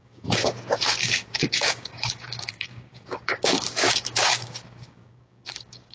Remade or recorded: remade